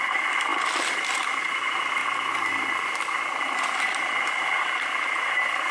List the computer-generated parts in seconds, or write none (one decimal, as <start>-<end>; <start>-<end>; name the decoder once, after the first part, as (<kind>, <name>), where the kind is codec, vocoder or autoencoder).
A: 0.0-0.5 (vocoder, BigVGAN v2); 1.4-2.0